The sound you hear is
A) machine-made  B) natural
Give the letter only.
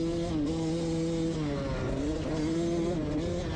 B